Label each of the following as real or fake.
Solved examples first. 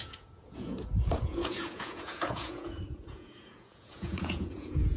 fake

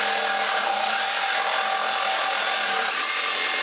real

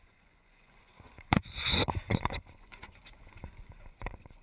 fake